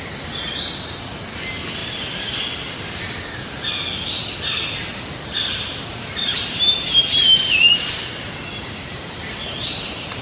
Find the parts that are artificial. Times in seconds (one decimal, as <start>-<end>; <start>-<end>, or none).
6.3-7.0; 8.5-9.0